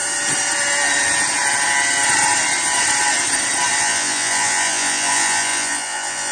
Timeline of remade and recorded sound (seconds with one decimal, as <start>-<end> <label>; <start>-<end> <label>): 0.0-3.8 recorded; 3.8-6.3 remade